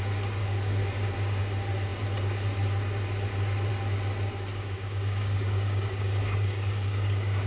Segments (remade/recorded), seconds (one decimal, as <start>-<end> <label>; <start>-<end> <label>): 0.0-0.4 recorded; 0.4-1.4 remade; 1.4-4.5 recorded; 4.5-7.5 remade